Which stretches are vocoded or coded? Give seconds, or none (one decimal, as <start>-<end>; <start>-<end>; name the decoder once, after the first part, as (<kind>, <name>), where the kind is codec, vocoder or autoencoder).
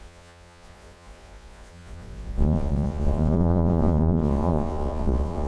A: 0.0-5.5 (vocoder, Vocos)